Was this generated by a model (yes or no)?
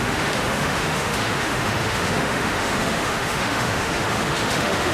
yes